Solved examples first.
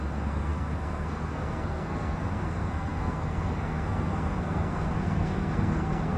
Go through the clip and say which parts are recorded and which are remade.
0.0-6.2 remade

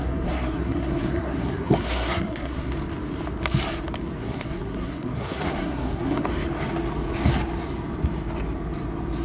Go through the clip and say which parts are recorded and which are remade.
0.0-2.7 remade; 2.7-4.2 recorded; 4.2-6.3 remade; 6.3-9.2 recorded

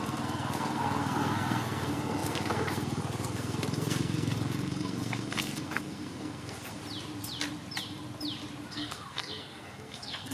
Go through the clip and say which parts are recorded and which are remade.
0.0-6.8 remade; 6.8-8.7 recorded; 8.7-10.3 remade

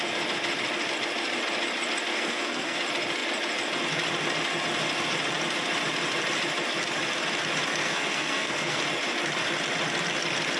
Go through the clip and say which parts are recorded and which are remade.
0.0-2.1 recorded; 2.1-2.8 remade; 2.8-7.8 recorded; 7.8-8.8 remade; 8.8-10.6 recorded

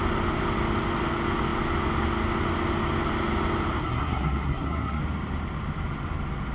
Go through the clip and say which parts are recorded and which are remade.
0.0-3.8 recorded; 3.8-5.0 remade; 5.0-6.5 recorded

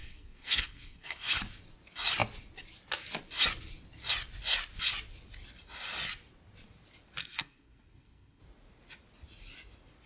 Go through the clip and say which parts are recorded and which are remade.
0.0-1.4 remade; 1.4-7.2 recorded; 7.2-8.4 remade; 8.4-10.1 recorded

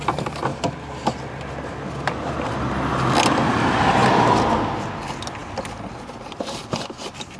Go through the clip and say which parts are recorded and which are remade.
0.0-7.4 recorded

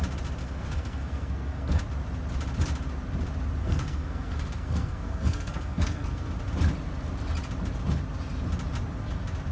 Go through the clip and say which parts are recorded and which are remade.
0.0-0.4 recorded; 0.4-1.8 remade; 1.8-3.6 recorded; 3.6-6.3 remade; 6.3-9.5 recorded